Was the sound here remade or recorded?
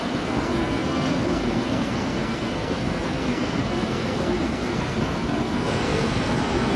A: remade